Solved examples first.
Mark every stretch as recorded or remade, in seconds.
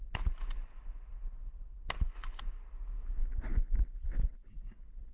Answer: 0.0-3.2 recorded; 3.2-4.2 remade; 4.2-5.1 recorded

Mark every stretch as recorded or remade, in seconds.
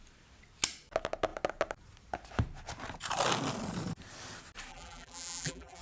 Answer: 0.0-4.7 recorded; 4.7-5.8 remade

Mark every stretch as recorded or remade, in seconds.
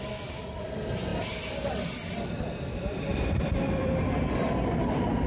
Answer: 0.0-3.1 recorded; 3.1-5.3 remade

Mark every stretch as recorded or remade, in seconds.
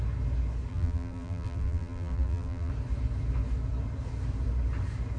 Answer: 0.0-0.7 recorded; 0.7-2.7 remade; 2.7-5.2 recorded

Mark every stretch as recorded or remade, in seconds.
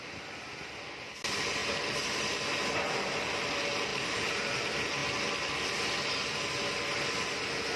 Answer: 0.0-1.6 recorded; 1.6-2.4 remade; 2.4-3.9 recorded; 3.9-4.5 remade; 4.5-7.8 recorded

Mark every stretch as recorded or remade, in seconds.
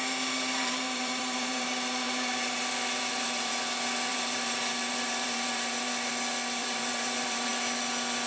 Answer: 0.0-3.5 remade; 3.5-4.1 recorded; 4.1-6.1 remade; 6.1-6.6 recorded; 6.6-7.5 remade; 7.5-8.3 recorded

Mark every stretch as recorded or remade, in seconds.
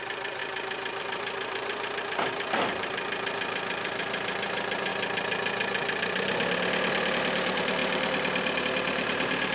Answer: 0.0-0.4 remade; 0.4-1.0 recorded; 1.0-4.9 remade; 4.9-7.1 recorded; 7.1-9.5 remade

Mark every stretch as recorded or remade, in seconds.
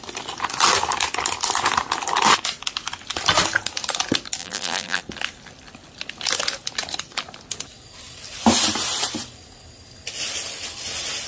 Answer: 0.0-4.4 recorded; 4.4-5.0 remade; 5.0-11.3 recorded